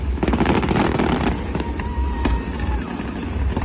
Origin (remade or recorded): recorded